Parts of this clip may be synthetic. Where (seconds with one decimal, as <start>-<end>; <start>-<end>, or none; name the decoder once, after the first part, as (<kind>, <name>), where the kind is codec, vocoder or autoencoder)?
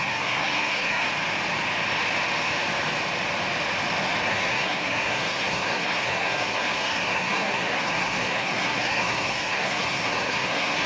0.0-1.1 (codec, SNAC); 4.2-10.9